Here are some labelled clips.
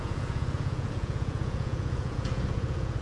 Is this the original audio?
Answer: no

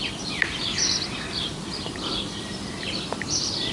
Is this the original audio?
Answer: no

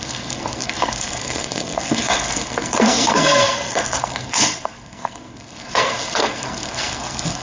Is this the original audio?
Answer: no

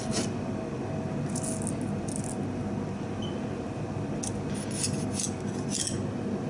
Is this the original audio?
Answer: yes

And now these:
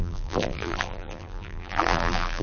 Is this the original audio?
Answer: no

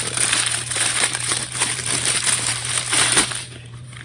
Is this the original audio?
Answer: no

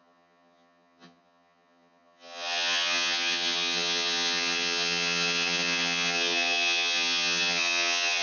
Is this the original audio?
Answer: no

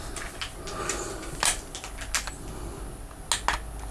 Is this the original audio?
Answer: yes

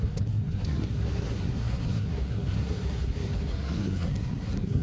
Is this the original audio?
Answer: no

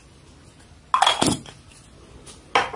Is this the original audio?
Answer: yes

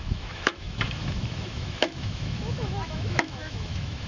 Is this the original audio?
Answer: no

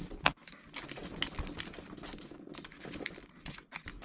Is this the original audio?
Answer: yes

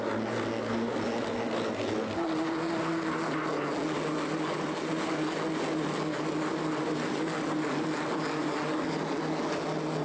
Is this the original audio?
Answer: yes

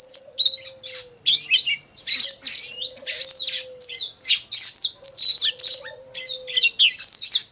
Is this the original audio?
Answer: yes